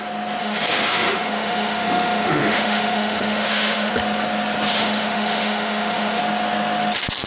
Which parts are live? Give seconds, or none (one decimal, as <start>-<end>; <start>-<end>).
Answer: 0.0-0.4; 3.9-4.7; 6.2-7.3